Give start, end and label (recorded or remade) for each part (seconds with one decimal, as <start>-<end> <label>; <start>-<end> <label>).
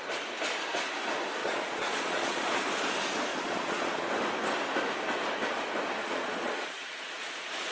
0.0-1.4 recorded; 1.4-2.6 remade; 2.6-3.3 recorded; 3.3-4.1 remade; 4.1-6.0 recorded; 6.0-7.7 remade